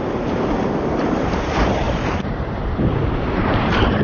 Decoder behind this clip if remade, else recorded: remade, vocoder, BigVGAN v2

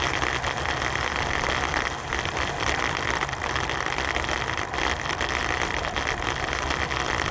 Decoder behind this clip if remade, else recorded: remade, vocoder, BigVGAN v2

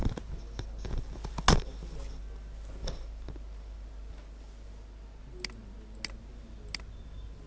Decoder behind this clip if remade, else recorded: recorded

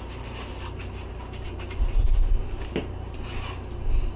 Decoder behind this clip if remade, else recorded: recorded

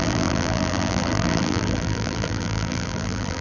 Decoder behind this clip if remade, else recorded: remade, vocoder, BigVGAN v2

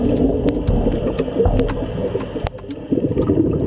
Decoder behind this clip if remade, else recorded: recorded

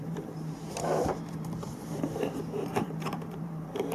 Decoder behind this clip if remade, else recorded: remade, vocoder, BigVGAN v2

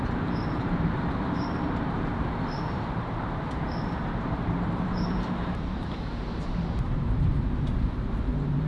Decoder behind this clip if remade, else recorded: remade, vocoder, BigVGAN v2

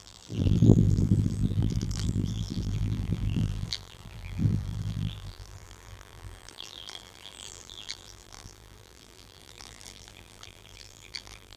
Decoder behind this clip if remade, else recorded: remade, vocoder, BigVGAN v2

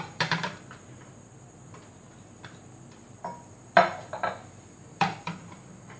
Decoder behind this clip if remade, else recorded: remade, vocoder, BigVGAN v2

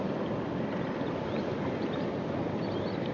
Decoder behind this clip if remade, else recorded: remade, vocoder, BigVGAN v2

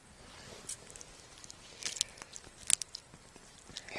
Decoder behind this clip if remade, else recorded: recorded